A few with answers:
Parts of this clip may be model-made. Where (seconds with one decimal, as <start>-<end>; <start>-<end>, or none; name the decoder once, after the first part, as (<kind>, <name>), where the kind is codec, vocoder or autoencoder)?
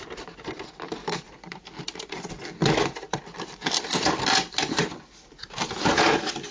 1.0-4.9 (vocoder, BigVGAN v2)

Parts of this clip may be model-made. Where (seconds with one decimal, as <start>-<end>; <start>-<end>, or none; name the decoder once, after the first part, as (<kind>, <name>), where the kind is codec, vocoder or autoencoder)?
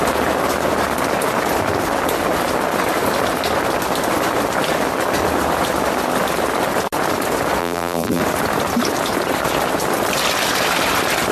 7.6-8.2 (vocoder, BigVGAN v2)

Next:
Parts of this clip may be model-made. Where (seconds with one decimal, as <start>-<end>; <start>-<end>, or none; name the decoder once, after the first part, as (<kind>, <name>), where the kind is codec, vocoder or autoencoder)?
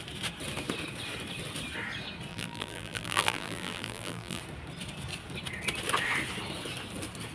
2.3-4.4 (vocoder, BigVGAN v2)